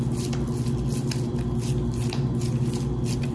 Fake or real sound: real